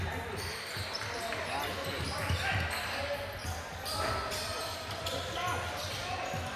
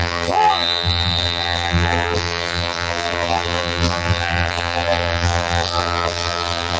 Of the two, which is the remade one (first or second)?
second